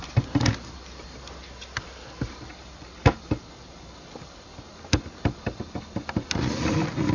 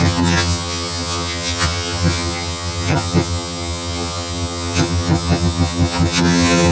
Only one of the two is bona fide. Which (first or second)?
first